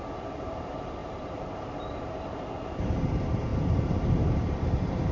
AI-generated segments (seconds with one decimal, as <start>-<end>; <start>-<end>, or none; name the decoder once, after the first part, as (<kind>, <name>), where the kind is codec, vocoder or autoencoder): 0.0-5.1 (vocoder, BigVGAN v2)